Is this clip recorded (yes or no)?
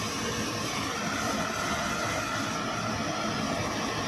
yes